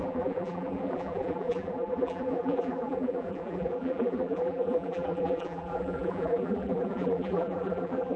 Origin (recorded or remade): remade